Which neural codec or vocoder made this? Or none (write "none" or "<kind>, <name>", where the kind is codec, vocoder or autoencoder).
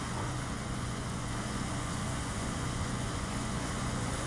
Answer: vocoder, Vocos